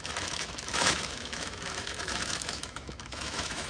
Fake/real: fake